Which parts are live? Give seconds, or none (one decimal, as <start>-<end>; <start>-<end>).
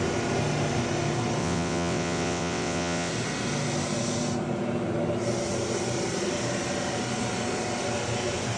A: 0.0-1.4; 3.1-8.6